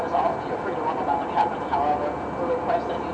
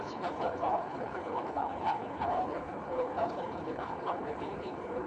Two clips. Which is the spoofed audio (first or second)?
second